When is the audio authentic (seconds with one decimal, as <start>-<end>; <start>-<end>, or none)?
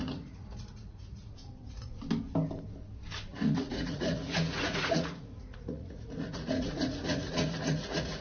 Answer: 2.0-3.3